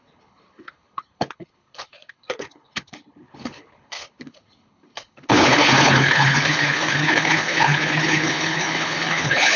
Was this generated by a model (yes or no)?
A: yes